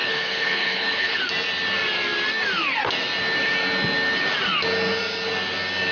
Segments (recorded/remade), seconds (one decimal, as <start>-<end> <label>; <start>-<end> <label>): 0.0-1.2 remade; 1.2-5.9 recorded